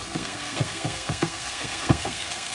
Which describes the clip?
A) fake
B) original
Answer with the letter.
A